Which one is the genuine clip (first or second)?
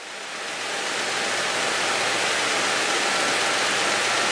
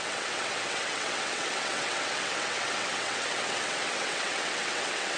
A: first